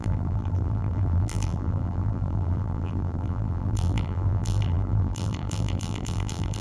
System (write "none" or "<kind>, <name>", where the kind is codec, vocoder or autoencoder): vocoder, BigVGAN v2